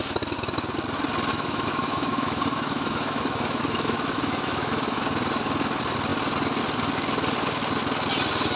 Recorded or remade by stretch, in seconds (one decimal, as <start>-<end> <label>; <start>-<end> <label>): 0.0-1.3 recorded; 1.3-5.0 remade; 5.0-8.6 recorded